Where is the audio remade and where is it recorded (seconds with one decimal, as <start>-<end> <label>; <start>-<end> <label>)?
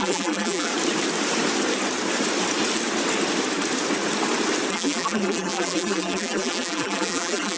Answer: 0.0-0.7 remade; 0.7-4.7 recorded; 4.7-7.6 remade